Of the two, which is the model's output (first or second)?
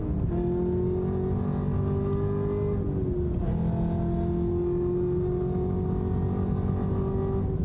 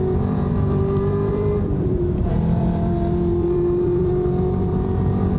second